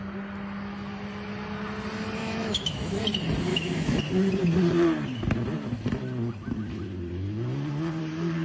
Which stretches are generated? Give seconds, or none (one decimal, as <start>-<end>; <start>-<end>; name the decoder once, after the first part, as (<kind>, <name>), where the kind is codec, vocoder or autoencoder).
2.2-3.0 (autoencoder, DAC-VAE); 3.5-4.0